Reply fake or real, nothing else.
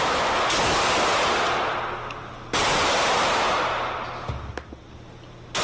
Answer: real